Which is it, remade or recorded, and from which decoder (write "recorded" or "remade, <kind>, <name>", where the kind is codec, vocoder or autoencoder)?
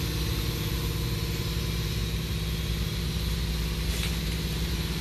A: recorded